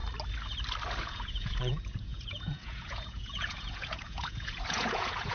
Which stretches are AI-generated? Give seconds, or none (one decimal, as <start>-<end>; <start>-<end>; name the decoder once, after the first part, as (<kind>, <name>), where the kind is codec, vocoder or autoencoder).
1.0-5.3 (vocoder, Vocos)